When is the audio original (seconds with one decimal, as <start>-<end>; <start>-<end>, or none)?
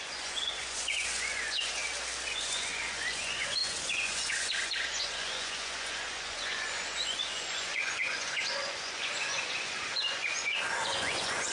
1.8-2.3